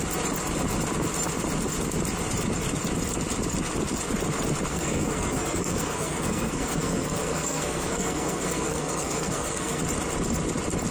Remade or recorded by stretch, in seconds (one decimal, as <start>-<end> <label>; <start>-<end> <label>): 0.0-4.7 recorded; 4.7-9.8 remade; 9.8-10.9 recorded